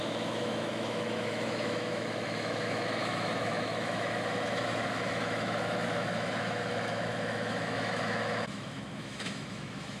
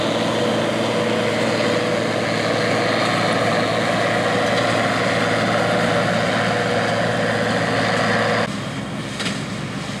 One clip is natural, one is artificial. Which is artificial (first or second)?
first